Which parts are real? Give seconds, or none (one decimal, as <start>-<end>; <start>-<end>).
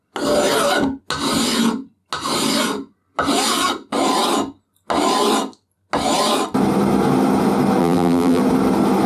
0.0-7.8; 8.4-9.1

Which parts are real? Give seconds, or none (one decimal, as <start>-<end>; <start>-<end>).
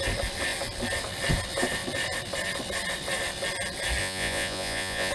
0.0-4.0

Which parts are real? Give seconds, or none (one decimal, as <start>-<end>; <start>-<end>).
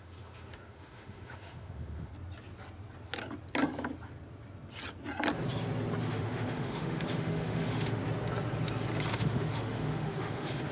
2.1-6.0; 8.0-9.1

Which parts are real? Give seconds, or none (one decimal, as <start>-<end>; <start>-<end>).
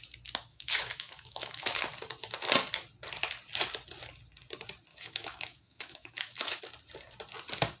0.0-0.5; 1.8-4.9; 6.6-7.8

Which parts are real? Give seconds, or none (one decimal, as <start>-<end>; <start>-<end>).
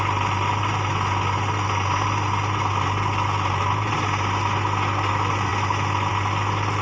0.0-6.8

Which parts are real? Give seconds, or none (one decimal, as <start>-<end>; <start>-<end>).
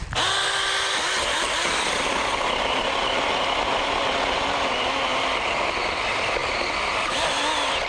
0.0-7.9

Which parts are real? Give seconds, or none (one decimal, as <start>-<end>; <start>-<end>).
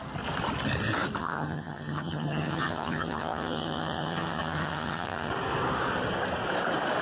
0.0-1.2; 5.3-7.0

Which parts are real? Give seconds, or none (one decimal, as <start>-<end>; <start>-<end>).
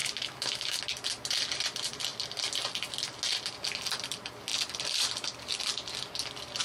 0.8-6.6